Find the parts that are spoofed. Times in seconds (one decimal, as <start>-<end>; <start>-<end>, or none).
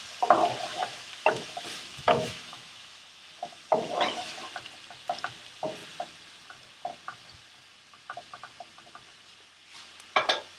0.7-4.5